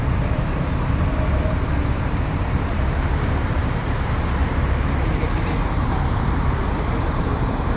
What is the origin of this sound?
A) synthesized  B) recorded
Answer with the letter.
A